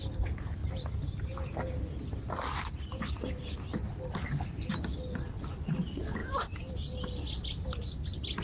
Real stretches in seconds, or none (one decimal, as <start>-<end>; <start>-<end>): 0.0-6.2; 6.7-8.4

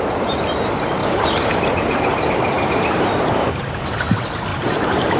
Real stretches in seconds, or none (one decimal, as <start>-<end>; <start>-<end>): 0.0-1.0; 4.1-4.5